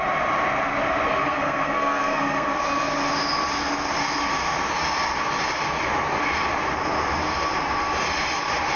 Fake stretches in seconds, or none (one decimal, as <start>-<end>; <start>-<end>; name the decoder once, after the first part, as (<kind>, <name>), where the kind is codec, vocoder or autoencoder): 1.2-2.6 (codec, SNAC)